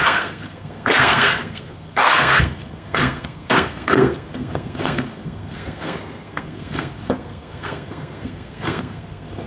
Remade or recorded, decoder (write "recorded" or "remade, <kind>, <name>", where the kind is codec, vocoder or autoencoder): remade, codec, SNAC